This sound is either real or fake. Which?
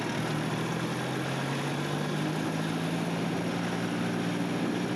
real